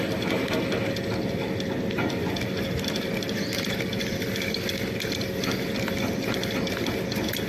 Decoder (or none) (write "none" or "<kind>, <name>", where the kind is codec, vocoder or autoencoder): none